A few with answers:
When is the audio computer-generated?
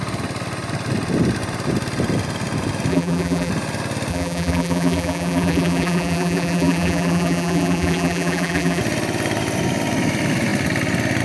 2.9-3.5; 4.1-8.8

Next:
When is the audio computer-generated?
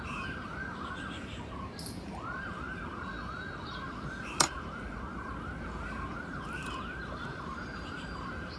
0.0-8.6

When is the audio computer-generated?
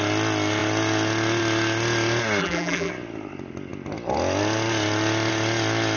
2.4-2.9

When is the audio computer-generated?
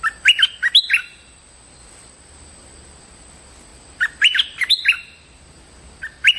3.7-5.4